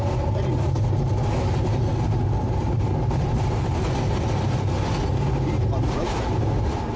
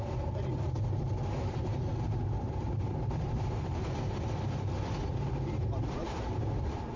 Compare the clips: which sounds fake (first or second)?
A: second